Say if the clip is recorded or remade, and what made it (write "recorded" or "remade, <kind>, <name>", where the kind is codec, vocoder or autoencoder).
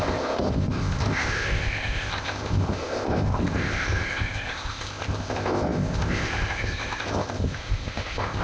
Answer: remade, codec, ZipCodec